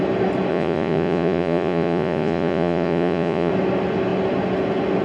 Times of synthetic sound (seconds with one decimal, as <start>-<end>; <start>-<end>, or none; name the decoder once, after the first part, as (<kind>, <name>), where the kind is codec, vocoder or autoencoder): 0.5-3.5 (vocoder, Vocos)